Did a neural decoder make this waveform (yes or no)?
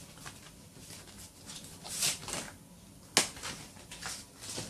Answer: no